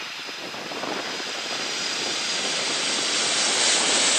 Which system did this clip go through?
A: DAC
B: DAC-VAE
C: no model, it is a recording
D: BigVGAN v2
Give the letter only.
C